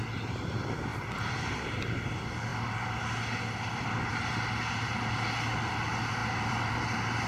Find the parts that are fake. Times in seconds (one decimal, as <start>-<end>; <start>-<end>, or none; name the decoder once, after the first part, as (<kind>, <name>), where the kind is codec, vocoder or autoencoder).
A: 0.9-1.8 (vocoder, BigVGAN v2); 6.2-6.8